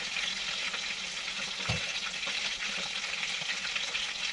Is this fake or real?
real